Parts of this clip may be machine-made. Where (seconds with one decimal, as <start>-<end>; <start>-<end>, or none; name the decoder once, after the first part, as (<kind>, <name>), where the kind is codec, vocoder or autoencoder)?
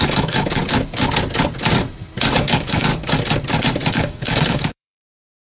0.0-0.6 (codec, DAC); 2.4-2.9; 3.9-5.6